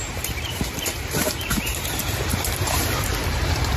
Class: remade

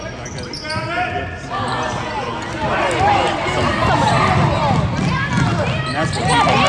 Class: recorded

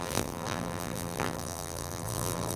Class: remade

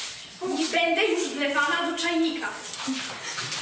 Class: recorded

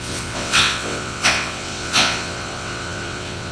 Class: remade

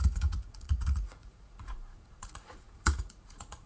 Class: remade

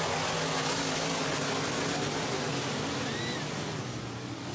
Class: recorded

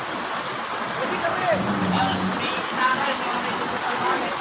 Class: recorded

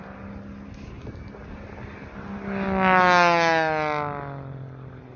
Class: recorded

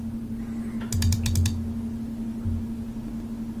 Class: recorded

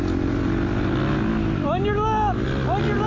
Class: recorded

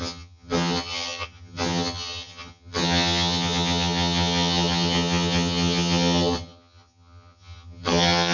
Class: remade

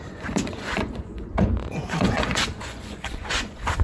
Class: remade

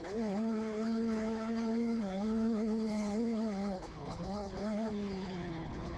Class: remade